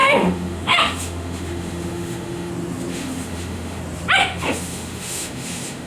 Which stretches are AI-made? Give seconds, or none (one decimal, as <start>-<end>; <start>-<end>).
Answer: 0.0-2.5; 2.9-3.8; 4.2-5.9